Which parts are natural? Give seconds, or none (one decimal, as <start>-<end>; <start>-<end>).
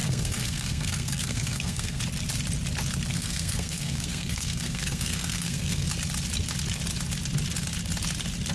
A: 2.0-3.1; 5.9-8.5